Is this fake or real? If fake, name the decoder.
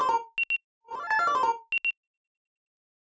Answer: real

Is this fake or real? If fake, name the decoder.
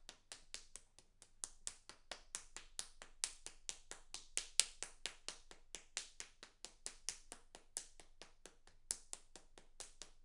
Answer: real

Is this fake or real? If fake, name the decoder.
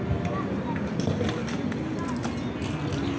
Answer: real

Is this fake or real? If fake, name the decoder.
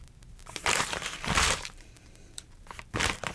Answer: fake, vocoder, BigVGAN v2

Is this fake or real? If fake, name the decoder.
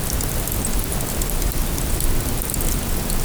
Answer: real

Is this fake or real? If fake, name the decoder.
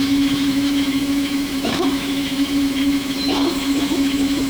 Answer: fake, autoencoder, DAC-VAE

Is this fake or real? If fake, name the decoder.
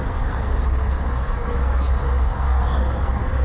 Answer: fake, codec, SNAC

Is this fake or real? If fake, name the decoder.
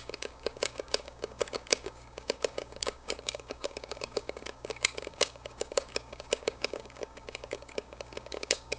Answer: fake, codec, DAC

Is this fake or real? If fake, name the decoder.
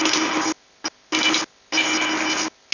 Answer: real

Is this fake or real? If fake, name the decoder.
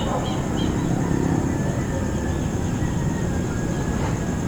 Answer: real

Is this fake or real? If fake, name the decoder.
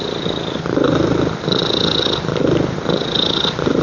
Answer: real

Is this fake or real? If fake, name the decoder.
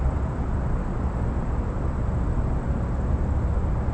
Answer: real